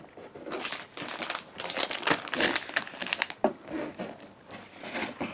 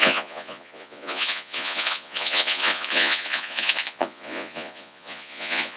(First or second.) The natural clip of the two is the first